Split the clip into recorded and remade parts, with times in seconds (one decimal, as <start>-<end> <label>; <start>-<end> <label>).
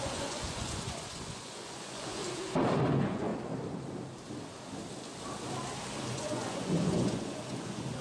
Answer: 0.0-2.2 remade; 2.2-2.9 recorded; 2.9-3.3 remade; 3.3-6.1 recorded; 6.1-8.0 remade